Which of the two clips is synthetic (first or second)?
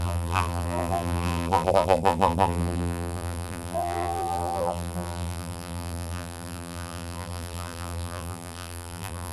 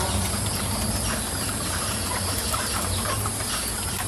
first